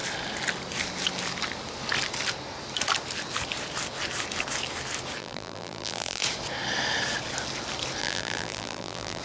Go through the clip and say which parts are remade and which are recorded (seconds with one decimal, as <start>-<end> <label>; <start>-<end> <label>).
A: 0.0-5.2 recorded; 5.2-6.2 remade; 6.2-8.0 recorded; 8.0-9.2 remade